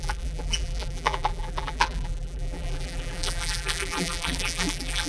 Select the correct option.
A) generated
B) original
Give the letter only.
A